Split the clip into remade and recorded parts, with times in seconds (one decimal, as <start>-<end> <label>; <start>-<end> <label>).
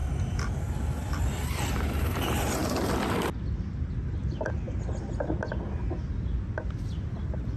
0.0-7.6 recorded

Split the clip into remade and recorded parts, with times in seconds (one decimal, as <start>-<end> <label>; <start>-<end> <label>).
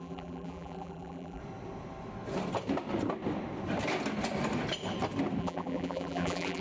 0.0-1.4 remade; 1.4-5.4 recorded; 5.4-6.6 remade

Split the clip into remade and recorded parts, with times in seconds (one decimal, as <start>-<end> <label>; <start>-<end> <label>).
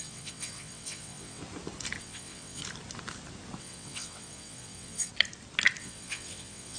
0.0-1.4 remade; 1.4-2.0 recorded; 2.0-2.6 remade; 2.6-3.6 recorded; 3.6-5.1 remade; 5.1-5.8 recorded; 5.8-6.8 remade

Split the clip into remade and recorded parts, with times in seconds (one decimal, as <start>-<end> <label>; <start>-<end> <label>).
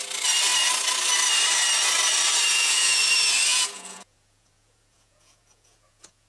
0.0-2.5 recorded; 2.5-3.0 remade; 3.0-3.5 recorded; 3.5-6.3 remade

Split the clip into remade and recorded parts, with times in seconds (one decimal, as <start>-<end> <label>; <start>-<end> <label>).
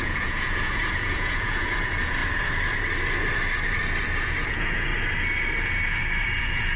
0.0-2.2 remade; 2.2-4.2 recorded; 4.2-4.9 remade; 4.9-6.3 recorded; 6.3-6.8 remade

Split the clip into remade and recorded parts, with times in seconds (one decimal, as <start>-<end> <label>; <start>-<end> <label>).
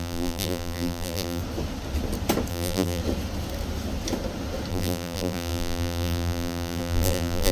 0.0-1.4 remade; 1.4-2.5 recorded; 2.5-3.0 remade; 3.0-4.7 recorded; 4.7-7.5 remade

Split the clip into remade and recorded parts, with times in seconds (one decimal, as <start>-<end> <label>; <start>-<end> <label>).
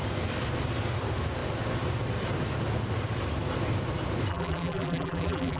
0.0-4.3 recorded; 4.3-5.6 remade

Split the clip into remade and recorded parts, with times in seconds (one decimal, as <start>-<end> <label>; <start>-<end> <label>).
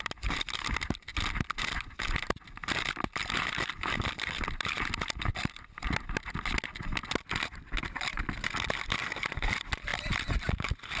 0.0-11.0 recorded